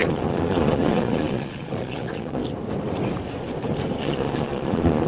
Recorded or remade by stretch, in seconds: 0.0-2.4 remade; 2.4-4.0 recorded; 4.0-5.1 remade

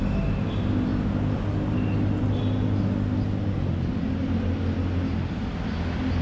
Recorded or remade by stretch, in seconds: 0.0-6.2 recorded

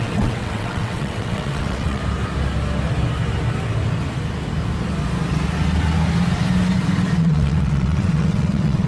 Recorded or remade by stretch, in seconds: 0.0-2.0 remade; 2.0-7.2 recorded; 7.2-8.9 remade